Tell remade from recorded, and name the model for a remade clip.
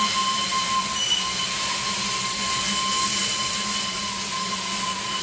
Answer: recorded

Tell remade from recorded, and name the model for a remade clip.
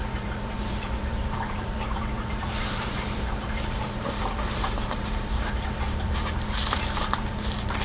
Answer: remade, vocoder, BigVGAN v2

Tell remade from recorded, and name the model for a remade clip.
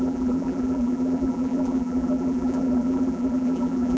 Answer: remade, vocoder, BigVGAN v2